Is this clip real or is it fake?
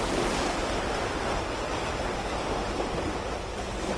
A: real